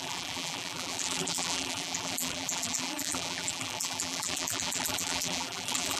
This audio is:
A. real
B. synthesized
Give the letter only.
B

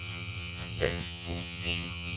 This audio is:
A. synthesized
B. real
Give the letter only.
A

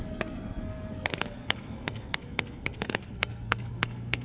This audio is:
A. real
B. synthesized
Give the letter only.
B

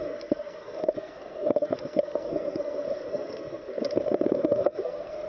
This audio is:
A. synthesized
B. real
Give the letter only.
A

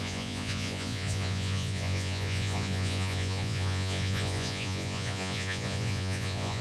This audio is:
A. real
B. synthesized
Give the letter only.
B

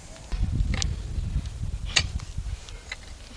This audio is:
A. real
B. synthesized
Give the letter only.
A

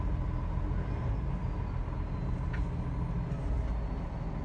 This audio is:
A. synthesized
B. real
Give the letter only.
B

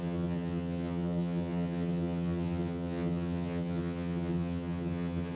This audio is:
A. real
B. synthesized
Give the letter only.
B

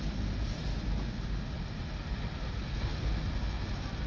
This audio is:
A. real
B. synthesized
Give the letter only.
A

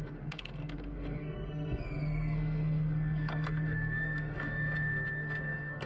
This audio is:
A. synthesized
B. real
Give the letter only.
A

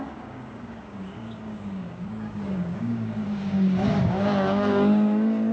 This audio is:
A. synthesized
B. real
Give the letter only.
A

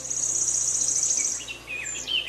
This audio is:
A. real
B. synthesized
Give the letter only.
A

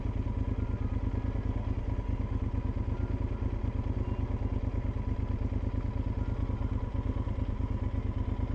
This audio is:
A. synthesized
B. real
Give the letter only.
B